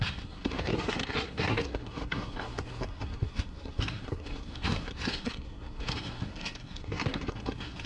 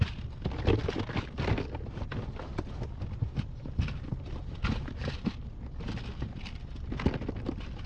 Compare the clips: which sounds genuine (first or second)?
second